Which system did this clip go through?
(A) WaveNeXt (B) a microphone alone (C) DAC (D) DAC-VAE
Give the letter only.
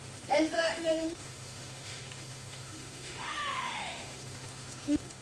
D